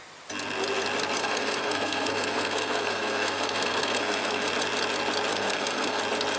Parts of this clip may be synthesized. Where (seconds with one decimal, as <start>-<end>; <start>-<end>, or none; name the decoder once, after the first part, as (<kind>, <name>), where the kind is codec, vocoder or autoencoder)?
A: 1.2-4.5 (codec, SNAC); 5.3-6.0